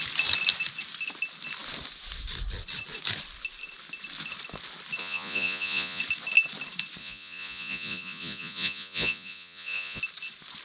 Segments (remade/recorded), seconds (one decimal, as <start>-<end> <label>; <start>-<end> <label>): 0.0-5.0 recorded; 5.0-6.0 remade; 6.0-7.0 recorded; 7.0-10.0 remade; 10.0-10.6 recorded